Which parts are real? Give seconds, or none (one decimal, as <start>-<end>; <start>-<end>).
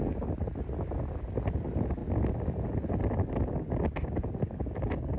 0.0-5.2